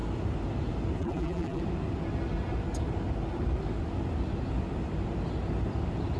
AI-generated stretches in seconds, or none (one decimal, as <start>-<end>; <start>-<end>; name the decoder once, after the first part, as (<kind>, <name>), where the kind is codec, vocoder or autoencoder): 1.0-1.6 (vocoder, BigVGAN v2)

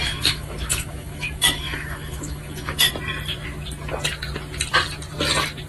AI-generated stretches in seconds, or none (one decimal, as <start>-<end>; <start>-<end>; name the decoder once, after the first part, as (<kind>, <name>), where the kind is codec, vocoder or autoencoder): 0.0-2.9 (autoencoder, DAC-VAE)

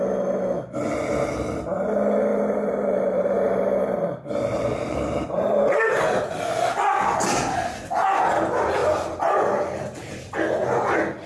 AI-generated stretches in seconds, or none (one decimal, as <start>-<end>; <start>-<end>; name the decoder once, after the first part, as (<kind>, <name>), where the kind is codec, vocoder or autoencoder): 2.3-6.0 (vocoder, BigVGAN v2)

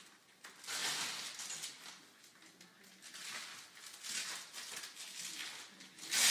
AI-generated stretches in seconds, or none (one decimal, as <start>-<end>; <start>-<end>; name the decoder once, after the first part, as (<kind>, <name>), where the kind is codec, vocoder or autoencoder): none

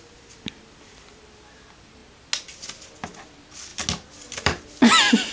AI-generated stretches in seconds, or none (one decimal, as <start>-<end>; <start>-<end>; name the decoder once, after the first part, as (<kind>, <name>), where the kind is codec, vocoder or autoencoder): none

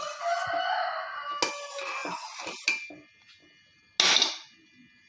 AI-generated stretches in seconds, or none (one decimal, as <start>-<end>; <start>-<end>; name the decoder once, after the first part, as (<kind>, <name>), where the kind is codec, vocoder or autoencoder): none